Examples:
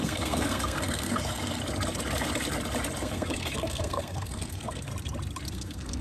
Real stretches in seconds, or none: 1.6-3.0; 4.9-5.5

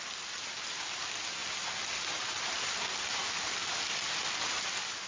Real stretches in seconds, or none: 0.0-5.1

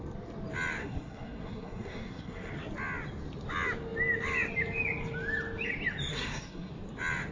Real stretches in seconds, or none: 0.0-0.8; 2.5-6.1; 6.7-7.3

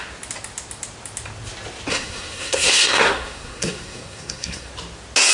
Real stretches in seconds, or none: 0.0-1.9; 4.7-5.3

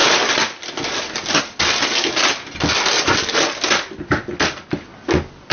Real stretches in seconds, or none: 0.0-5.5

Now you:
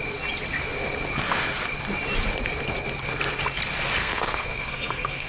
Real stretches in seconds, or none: 0.0-4.0